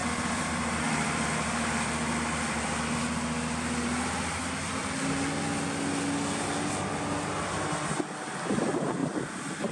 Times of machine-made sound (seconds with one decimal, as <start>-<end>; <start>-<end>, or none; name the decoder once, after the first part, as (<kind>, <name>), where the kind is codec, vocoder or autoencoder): 0.0-3.0 (vocoder, BigVGAN v2); 9.0-9.7